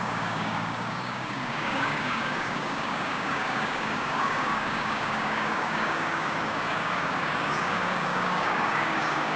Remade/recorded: remade